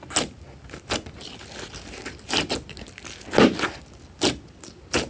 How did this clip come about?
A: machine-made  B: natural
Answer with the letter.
B